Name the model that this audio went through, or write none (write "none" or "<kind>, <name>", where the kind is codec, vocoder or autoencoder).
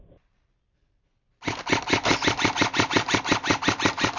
none